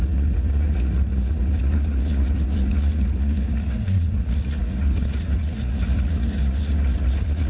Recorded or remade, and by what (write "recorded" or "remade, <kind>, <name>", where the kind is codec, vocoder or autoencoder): remade, vocoder, Vocos